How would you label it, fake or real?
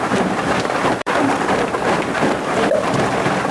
fake